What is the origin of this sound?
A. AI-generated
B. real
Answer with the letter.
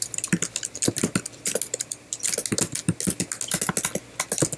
B